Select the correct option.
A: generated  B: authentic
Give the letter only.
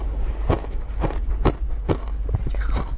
B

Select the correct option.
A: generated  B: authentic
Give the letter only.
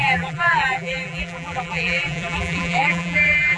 A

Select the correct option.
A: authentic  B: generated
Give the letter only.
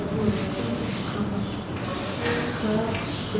A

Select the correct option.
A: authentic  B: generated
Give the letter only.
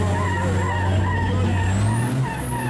A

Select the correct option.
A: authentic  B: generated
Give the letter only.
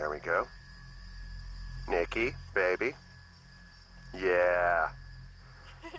A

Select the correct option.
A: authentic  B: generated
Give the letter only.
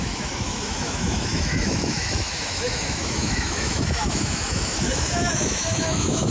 B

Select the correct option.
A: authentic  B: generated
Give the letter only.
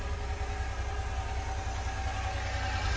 A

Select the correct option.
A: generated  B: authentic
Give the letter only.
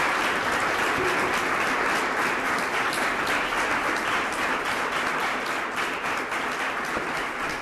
B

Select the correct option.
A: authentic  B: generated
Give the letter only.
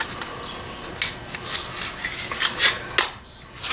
A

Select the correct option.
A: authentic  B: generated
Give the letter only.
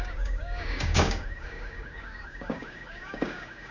B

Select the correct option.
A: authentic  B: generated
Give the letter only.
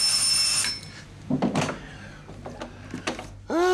A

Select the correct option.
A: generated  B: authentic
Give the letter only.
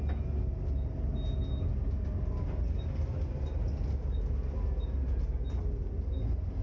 B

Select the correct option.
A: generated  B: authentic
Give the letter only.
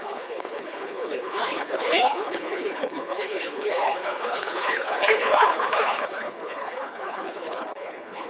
A